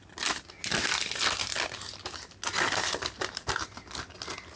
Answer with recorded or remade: recorded